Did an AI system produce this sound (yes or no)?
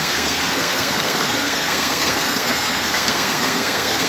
yes